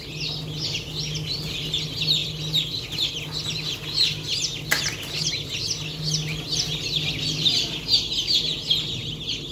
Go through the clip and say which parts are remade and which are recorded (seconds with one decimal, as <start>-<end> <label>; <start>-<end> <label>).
0.0-6.3 recorded; 6.3-8.6 remade; 8.6-9.5 recorded